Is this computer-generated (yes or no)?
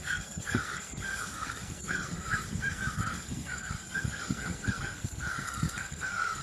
yes